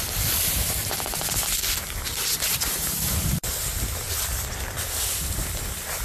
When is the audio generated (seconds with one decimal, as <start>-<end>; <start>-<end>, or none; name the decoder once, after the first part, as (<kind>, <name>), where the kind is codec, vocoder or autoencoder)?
0.8-3.6 (vocoder, BigVGAN v2)